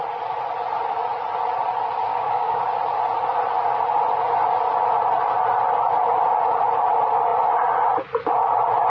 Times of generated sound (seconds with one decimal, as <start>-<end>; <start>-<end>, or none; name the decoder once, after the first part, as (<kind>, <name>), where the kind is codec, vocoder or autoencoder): 2.1-2.6 (codec, DAC)